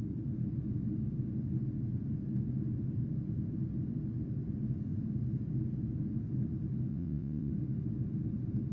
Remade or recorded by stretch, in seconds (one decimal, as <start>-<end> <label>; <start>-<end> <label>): 0.0-6.9 recorded; 6.9-7.5 remade; 7.5-8.7 recorded